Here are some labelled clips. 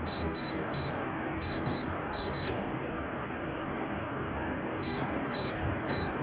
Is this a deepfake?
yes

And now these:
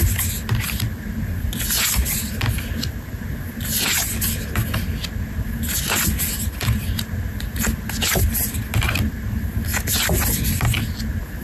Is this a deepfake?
no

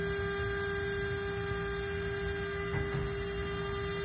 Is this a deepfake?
no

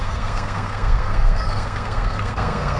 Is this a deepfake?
yes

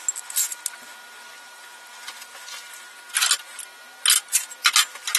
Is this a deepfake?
no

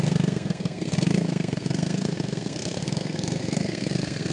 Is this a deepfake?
yes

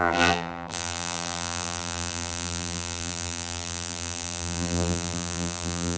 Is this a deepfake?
yes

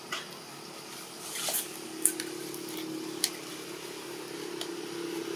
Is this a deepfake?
no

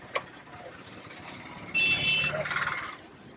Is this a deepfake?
no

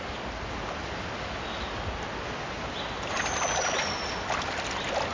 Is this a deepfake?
no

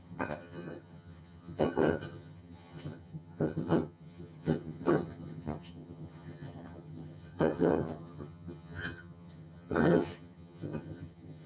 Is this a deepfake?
yes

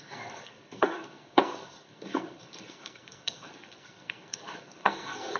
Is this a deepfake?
yes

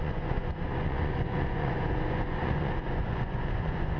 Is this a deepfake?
yes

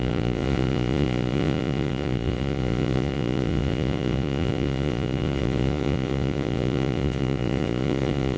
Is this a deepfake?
yes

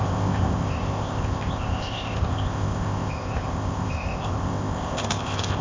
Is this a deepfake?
yes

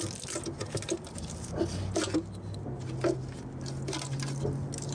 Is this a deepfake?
no